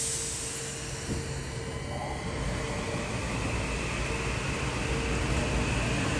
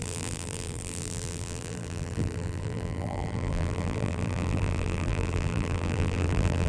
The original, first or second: first